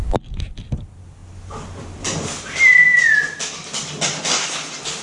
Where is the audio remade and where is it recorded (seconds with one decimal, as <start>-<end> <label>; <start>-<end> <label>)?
0.0-5.0 recorded